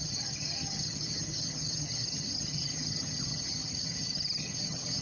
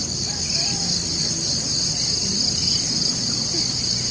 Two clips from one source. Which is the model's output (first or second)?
first